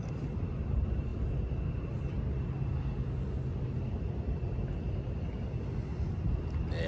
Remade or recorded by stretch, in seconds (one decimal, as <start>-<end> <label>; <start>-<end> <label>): 0.0-6.9 recorded